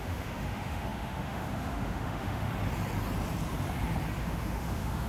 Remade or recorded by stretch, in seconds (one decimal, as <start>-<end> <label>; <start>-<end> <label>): 0.0-2.5 remade; 2.5-4.2 recorded; 4.2-5.1 remade